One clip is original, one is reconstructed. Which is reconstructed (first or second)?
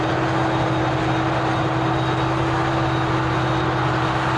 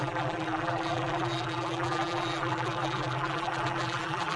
second